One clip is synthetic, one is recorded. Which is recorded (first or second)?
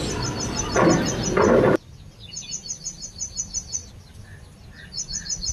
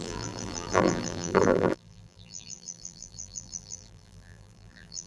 first